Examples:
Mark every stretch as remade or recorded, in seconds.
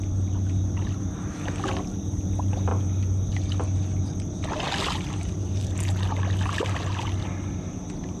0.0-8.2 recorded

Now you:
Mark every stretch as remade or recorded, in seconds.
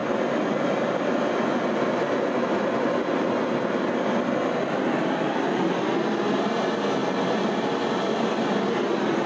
0.0-5.0 recorded; 5.0-5.9 remade; 5.9-9.3 recorded